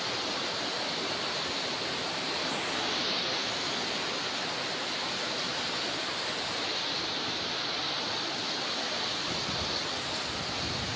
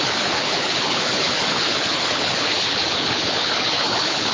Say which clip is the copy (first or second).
second